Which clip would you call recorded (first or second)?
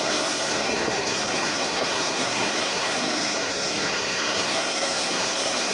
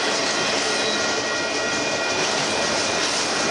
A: second